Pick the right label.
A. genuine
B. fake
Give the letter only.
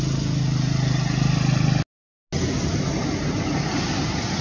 A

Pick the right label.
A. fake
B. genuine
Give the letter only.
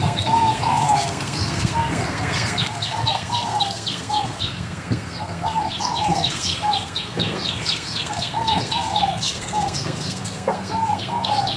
A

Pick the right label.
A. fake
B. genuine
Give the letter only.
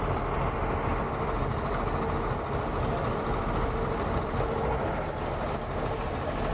B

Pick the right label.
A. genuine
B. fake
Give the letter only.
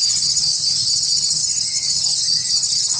B